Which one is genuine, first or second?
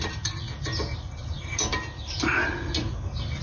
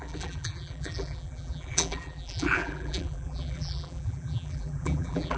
first